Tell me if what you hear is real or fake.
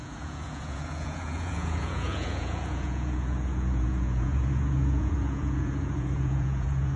fake